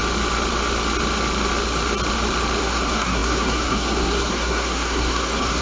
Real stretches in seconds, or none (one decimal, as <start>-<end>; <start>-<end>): 0.0-2.6